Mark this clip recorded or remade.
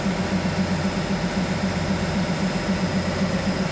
recorded